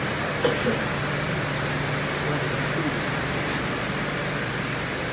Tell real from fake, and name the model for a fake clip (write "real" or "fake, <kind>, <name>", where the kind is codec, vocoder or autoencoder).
real